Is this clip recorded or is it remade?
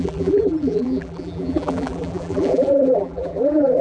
remade